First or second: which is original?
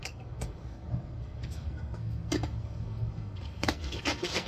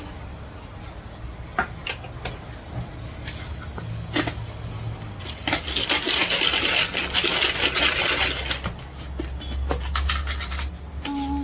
second